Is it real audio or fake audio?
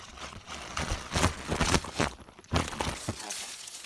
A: fake